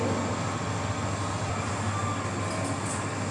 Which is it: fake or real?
real